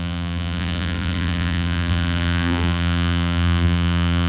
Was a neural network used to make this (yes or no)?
yes